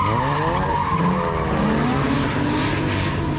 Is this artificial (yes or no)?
no